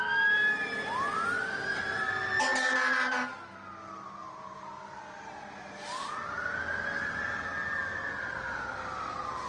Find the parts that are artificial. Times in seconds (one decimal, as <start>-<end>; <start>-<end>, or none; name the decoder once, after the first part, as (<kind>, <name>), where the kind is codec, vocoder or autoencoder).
none